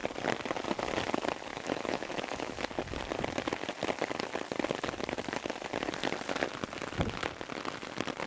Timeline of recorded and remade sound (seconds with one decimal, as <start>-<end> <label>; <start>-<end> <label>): 0.0-1.5 recorded; 1.5-2.7 remade; 2.7-8.3 recorded